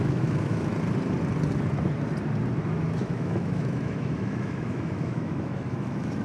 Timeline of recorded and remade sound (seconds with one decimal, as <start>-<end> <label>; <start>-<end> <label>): 0.0-0.7 remade; 0.7-2.6 recorded; 2.6-6.2 remade